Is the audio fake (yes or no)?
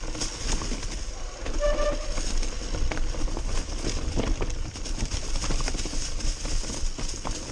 no